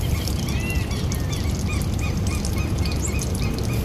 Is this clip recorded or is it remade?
recorded